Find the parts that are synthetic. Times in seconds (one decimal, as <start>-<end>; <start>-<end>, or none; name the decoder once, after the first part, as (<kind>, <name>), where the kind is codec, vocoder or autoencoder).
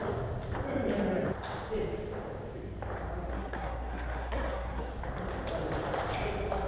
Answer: 3.3-4.9 (codec, SNAC)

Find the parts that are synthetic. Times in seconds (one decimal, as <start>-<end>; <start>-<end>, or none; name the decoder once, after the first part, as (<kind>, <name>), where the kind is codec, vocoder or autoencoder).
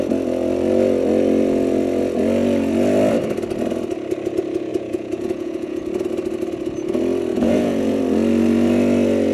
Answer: 4.7-5.8 (vocoder, Vocos); 7.3-8.0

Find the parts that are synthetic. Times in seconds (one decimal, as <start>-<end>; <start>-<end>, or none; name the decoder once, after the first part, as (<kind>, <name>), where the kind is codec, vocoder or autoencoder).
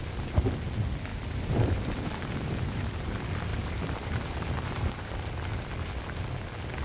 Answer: 1.1-3.0 (vocoder, BigVGAN v2); 3.5-5.1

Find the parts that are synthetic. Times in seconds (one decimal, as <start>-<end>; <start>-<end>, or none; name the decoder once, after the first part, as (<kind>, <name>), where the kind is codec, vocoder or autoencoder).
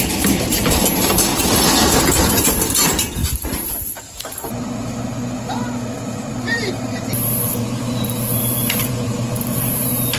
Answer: 0.0-1.3 (vocoder, BigVGAN v2); 2.3-10.2